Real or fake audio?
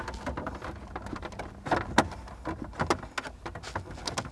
real